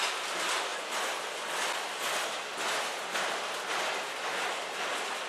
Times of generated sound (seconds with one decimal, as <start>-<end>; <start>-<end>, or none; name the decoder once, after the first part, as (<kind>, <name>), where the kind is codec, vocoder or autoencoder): none